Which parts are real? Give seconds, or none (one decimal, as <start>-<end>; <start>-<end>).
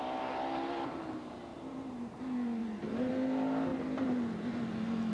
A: 0.0-1.5; 2.2-2.6; 3.1-5.1